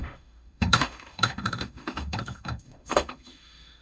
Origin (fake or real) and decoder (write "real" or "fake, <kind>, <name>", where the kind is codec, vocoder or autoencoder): fake, autoencoder, DAC-VAE